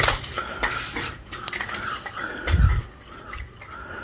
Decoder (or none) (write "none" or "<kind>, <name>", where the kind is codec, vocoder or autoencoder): none